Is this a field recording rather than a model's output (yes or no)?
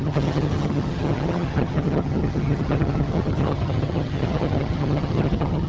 no